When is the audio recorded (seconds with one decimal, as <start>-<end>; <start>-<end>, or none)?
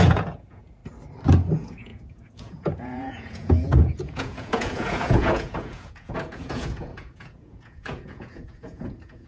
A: 0.8-1.5